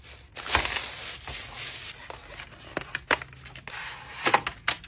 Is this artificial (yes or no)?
no